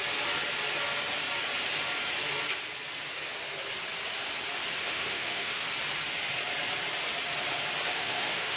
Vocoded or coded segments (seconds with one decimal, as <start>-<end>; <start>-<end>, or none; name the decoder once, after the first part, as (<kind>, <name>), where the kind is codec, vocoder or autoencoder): 4.8-5.6 (autoencoder, DAC-VAE); 7.9-8.6